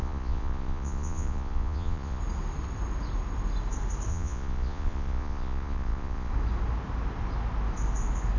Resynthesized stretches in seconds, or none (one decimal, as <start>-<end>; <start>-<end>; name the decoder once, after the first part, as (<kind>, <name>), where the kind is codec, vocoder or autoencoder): 0.0-2.2 (vocoder, Vocos); 4.1-6.3